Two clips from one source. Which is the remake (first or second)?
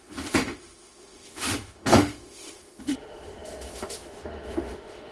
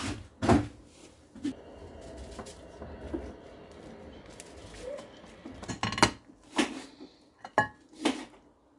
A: first